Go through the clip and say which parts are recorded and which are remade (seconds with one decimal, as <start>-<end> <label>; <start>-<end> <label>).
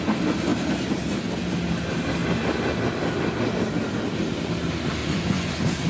0.0-5.0 recorded; 5.0-5.5 remade; 5.5-5.9 recorded